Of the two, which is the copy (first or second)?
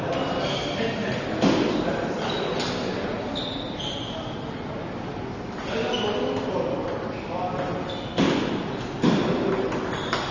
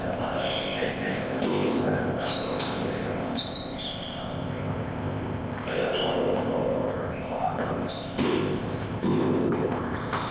second